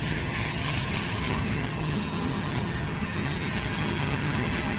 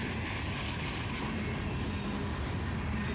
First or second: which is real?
second